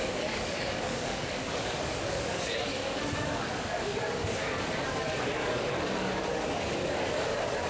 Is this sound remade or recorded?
remade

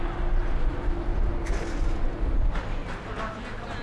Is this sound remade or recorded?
recorded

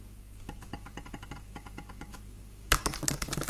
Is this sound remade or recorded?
remade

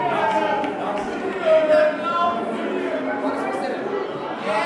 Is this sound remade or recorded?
recorded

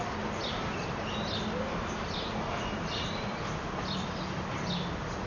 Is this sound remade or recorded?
recorded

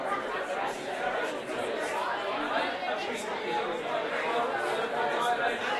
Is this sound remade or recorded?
recorded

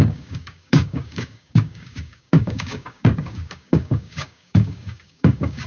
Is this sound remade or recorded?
remade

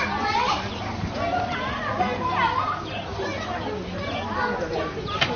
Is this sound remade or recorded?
recorded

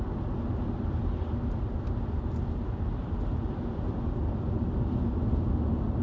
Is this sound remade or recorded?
recorded